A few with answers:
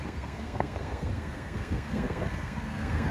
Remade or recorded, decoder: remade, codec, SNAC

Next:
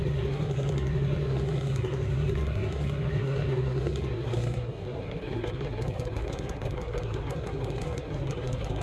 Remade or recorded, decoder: remade, codec, SNAC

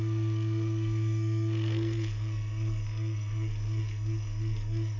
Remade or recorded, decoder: remade, codec, SNAC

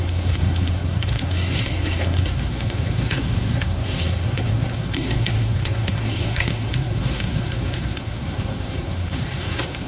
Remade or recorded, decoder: remade, codec, SNAC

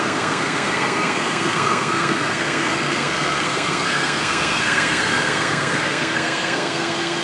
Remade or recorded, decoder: remade, codec, SNAC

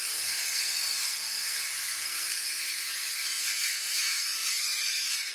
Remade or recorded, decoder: remade, codec, SNAC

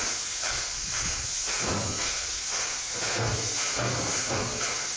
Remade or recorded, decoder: remade, codec, SNAC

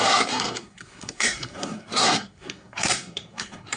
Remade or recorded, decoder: remade, codec, SNAC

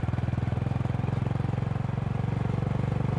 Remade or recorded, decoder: recorded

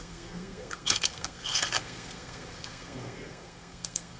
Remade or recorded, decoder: remade, codec, SNAC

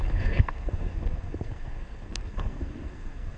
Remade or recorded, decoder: remade, codec, SNAC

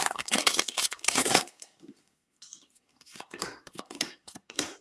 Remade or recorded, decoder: remade, codec, SNAC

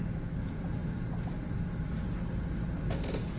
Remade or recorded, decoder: recorded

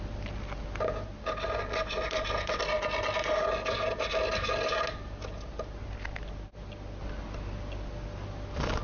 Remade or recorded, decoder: recorded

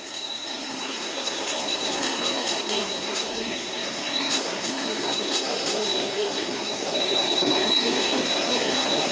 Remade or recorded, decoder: remade, codec, SNAC